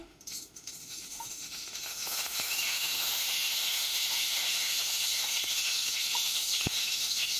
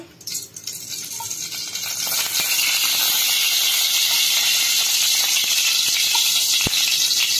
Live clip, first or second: second